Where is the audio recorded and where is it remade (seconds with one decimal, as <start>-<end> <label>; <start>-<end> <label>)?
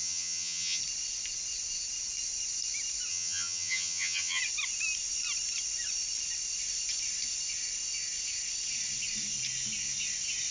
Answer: 0.0-0.8 remade; 0.8-3.1 recorded; 3.1-4.4 remade; 4.4-10.5 recorded